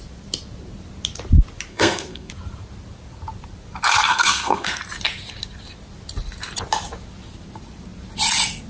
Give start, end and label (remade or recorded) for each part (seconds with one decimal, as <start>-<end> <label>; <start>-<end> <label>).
0.0-1.7 recorded; 1.7-2.3 remade; 2.3-4.1 recorded; 4.1-4.8 remade; 4.8-8.7 recorded

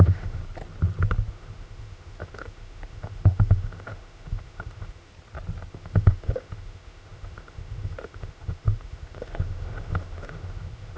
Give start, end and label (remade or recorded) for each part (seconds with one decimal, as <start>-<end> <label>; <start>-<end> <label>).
0.0-0.4 remade; 0.4-1.3 recorded; 1.3-5.1 remade; 5.1-5.7 recorded; 5.7-11.0 remade

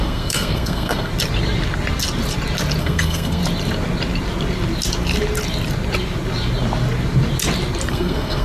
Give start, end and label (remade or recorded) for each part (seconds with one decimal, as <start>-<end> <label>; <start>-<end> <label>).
0.0-1.1 remade; 1.1-2.8 recorded; 2.8-3.4 remade; 3.4-7.9 recorded; 7.9-8.4 remade

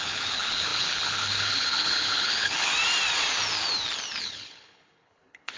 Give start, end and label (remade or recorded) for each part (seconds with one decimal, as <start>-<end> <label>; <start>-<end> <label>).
0.0-2.7 remade; 2.7-4.2 recorded; 4.2-5.6 remade

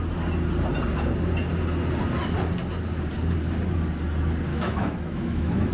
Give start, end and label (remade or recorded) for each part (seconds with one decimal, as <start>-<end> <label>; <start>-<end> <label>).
0.0-4.5 recorded; 4.5-5.7 remade

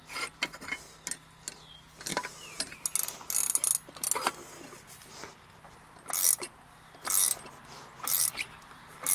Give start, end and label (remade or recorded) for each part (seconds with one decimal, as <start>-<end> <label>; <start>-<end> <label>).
0.0-9.1 recorded

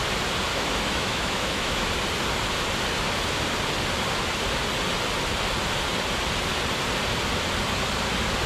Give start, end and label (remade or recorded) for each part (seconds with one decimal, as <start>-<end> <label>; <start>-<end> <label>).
0.0-0.5 recorded; 0.5-1.9 remade; 1.9-8.5 recorded